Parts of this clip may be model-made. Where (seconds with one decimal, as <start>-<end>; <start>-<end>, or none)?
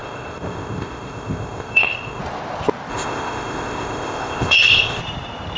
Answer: 0.0-2.2; 2.9-5.0